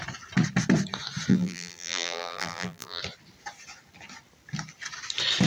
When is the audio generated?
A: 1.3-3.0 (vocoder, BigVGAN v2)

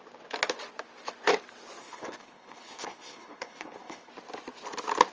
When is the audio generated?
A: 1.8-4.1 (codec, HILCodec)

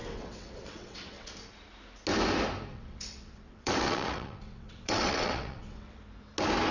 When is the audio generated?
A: 0.0-1.3 (vocoder, WaveNeXt); 2.7-6.0

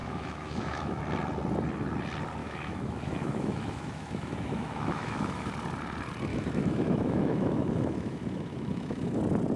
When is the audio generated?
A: 0.0-1.0 (autoencoder, DAC-VAE); 2.4-5.5; 6.3-9.2